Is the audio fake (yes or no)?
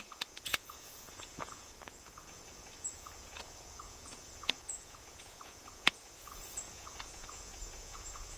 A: yes